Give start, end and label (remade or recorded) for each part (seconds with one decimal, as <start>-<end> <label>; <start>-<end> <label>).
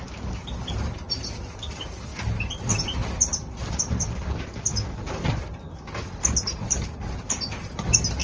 0.0-8.2 recorded